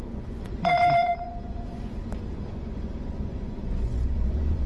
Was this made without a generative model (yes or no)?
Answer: no